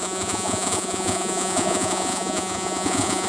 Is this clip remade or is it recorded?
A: remade